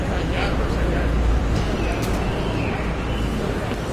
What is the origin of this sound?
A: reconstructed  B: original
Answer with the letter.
B